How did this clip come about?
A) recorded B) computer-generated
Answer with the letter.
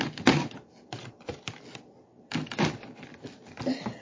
B